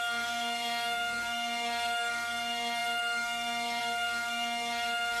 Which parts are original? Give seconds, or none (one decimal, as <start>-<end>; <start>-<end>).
none